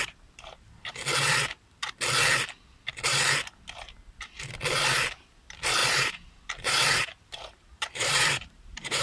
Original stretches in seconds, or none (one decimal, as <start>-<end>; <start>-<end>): 0.0-5.8

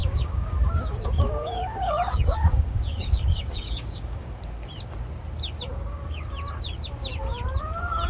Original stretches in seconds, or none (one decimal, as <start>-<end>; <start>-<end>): 4.3-5.7; 6.3-8.1

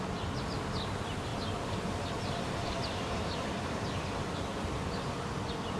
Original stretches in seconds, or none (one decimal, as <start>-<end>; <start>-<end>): 0.0-1.3; 3.9-5.8

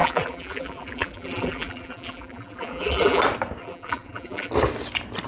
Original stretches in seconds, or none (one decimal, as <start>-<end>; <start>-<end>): 3.2-3.6; 4.5-5.3

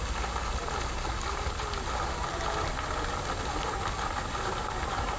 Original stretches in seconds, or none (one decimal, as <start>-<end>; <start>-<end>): 0.0-5.2

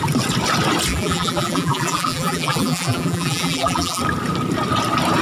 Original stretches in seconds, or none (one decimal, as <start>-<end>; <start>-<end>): 0.0-0.9; 4.0-5.2

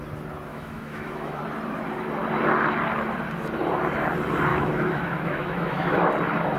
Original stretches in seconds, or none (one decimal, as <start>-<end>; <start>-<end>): 0.0-0.5; 1.4-4.5; 6.1-6.6